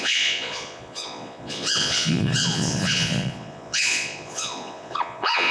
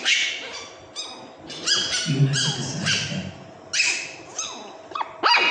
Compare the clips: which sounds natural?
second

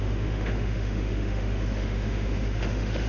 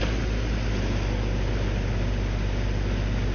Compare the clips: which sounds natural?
second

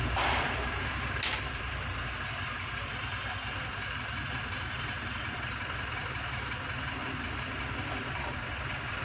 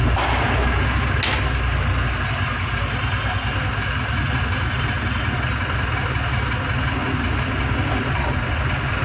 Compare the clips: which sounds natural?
second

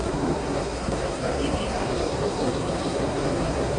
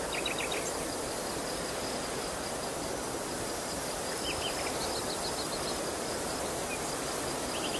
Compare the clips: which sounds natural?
second